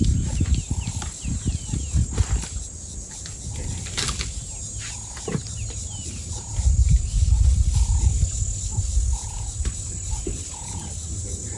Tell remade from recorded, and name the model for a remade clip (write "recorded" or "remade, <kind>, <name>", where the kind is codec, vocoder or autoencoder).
recorded